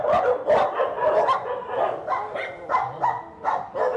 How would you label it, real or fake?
real